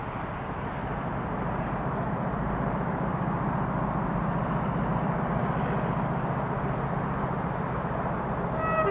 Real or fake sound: real